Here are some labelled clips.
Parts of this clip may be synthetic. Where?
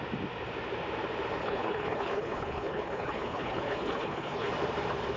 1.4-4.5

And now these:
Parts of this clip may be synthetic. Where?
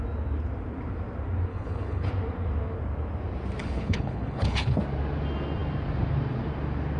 1.5-2.1; 3.6-4.8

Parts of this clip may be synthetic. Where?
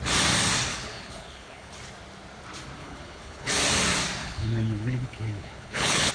0.7-1.7; 2.8-3.5; 4.2-6.1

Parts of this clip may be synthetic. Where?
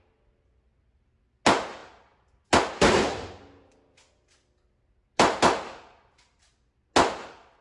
none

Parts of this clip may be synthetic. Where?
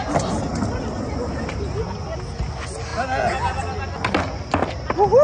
none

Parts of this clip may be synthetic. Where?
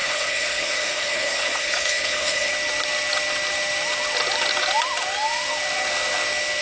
0.0-2.5